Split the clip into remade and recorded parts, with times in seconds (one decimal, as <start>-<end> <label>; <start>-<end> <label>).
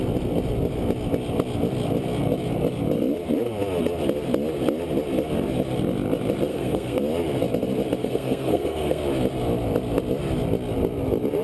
0.0-6.5 recorded; 6.5-7.0 remade; 7.0-8.0 recorded; 8.0-9.0 remade; 9.0-11.4 recorded